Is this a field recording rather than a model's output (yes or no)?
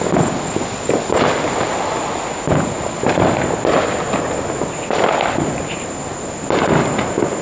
yes